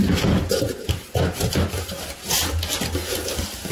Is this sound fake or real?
real